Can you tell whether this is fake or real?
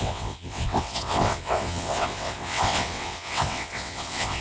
fake